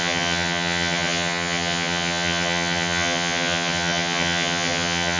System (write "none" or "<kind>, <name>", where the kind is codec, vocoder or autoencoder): vocoder, HiFi-GAN